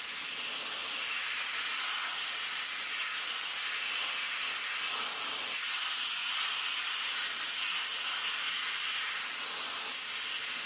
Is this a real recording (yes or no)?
yes